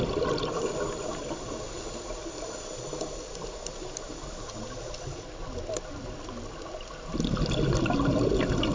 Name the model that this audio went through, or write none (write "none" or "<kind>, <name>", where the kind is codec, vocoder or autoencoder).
none